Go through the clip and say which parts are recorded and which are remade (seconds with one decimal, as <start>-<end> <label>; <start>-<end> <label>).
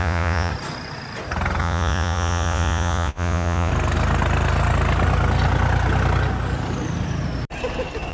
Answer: 0.0-0.5 remade; 0.5-1.6 recorded; 1.6-3.7 remade; 3.7-8.1 recorded